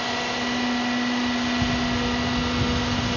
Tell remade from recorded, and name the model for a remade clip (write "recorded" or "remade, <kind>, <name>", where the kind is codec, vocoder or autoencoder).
recorded